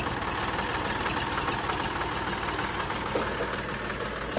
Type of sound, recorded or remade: recorded